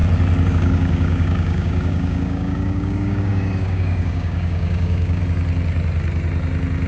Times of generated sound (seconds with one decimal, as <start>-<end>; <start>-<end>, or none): 0.5-5.2